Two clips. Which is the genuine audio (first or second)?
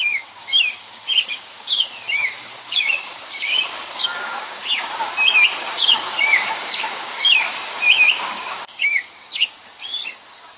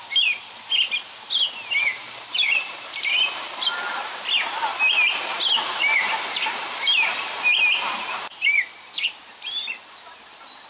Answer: second